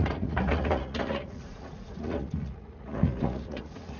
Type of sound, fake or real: fake